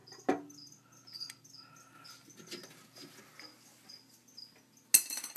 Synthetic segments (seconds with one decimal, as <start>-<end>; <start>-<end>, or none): none